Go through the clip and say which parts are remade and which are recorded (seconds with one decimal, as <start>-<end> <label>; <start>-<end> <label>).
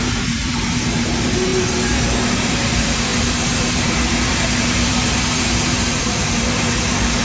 0.0-7.2 remade